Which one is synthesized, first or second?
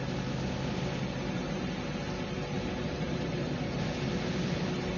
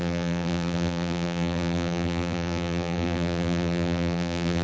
second